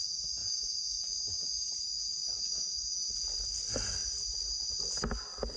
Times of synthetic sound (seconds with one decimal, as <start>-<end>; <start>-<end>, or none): none